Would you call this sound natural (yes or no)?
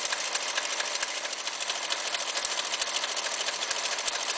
yes